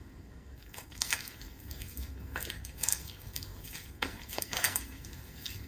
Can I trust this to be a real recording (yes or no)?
no